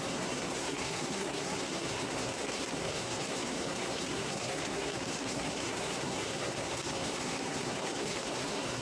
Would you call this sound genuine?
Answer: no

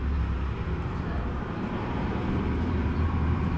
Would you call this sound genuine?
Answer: no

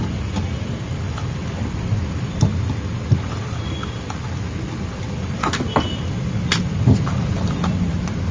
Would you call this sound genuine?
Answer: yes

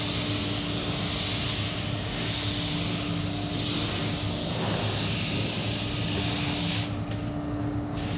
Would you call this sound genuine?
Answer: yes